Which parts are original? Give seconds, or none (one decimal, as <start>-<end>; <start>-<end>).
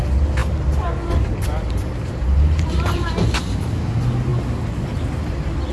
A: 0.0-0.4; 3.8-5.7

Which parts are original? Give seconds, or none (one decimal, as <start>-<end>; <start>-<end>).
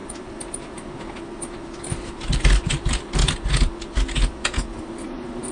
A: 0.0-2.2; 3.2-4.8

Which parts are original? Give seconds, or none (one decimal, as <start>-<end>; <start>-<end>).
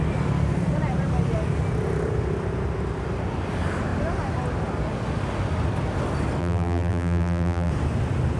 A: 0.0-6.4; 7.7-8.4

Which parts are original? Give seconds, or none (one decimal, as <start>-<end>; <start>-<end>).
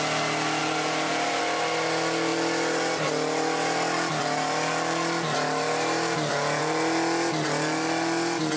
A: 0.0-0.6; 1.4-8.6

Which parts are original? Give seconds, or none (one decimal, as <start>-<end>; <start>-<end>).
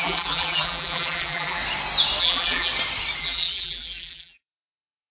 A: 1.6-2.2; 2.7-3.2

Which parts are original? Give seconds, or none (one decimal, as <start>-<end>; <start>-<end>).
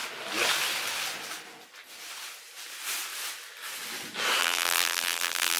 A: 0.0-4.4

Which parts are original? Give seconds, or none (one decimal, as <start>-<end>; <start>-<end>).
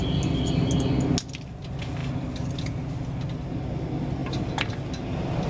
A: 0.0-5.5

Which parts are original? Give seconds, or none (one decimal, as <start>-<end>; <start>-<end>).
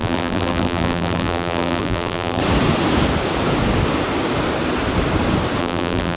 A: 2.4-5.6